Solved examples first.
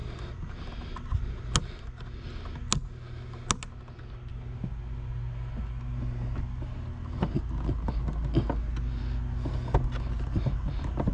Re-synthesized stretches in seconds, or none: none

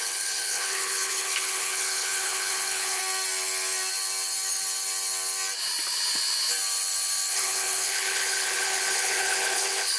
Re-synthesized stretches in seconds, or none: 0.0-3.0 (codec, HILCodec); 7.3-10.0